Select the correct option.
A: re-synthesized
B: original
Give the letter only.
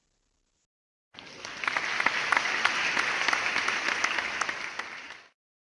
B